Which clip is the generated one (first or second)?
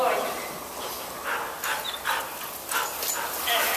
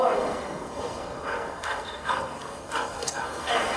second